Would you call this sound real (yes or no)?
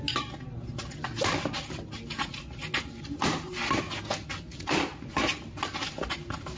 yes